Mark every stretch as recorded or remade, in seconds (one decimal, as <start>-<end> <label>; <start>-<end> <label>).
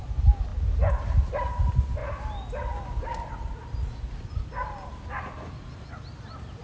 0.0-6.6 recorded